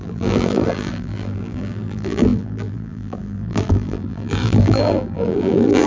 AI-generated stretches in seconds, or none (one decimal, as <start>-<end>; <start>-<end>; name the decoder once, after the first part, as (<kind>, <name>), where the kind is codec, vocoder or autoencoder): 0.0-5.9 (vocoder, BigVGAN v2)